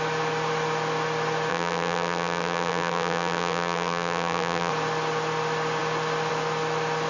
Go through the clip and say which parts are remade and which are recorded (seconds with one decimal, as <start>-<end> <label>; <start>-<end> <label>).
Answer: 0.0-1.5 recorded; 1.5-4.7 remade; 4.7-7.1 recorded